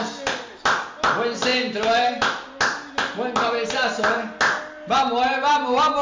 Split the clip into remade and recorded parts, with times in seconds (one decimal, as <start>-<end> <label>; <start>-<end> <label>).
0.0-6.0 recorded